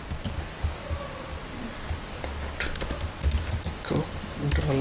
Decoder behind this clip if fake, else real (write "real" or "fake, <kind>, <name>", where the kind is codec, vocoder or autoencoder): real